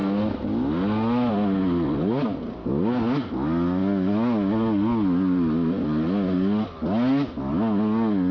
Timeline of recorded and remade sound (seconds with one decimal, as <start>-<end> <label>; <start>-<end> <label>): 0.0-8.3 recorded